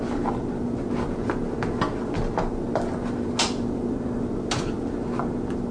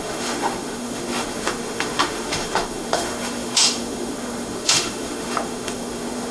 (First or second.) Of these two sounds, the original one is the first